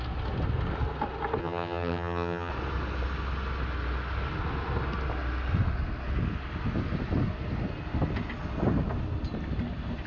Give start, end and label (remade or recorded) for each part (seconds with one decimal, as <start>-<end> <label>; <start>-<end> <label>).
0.0-1.4 recorded; 1.4-2.5 remade; 2.5-10.1 recorded